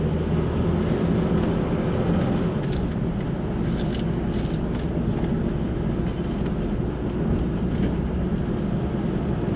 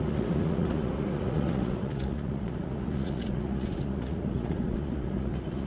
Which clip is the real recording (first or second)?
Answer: first